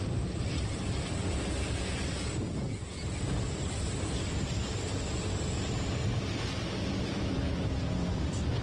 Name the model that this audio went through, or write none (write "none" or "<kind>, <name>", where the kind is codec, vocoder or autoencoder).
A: vocoder, BigVGAN v2